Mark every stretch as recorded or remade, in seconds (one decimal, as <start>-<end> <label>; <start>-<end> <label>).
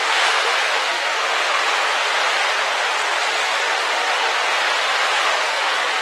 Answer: 0.0-1.6 remade; 1.6-3.4 recorded; 3.4-4.3 remade; 4.3-5.1 recorded; 5.1-6.0 remade